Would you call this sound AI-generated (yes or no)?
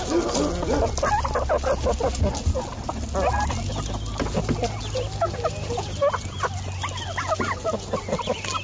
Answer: no